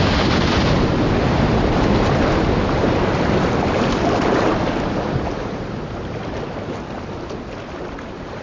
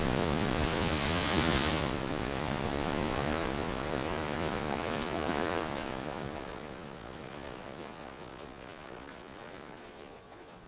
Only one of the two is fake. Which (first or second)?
second